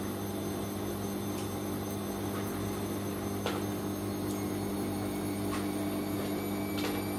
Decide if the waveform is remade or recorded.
recorded